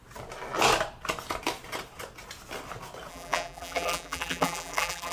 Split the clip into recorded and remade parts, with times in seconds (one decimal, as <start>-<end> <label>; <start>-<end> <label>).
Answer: 0.0-3.1 recorded; 3.1-5.1 remade